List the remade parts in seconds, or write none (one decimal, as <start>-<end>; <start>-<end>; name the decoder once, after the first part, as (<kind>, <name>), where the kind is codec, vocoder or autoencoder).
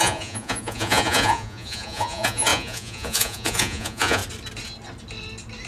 0.0-4.2 (vocoder, Vocos)